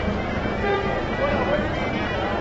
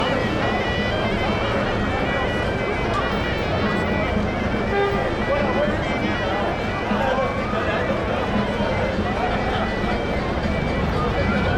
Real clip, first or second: second